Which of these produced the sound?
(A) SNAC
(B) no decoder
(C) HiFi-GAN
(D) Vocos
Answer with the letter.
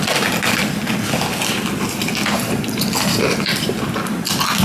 B